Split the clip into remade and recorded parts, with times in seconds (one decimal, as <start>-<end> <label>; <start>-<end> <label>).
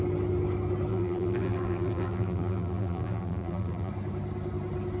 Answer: 0.0-0.9 recorded; 0.9-3.9 remade; 3.9-5.0 recorded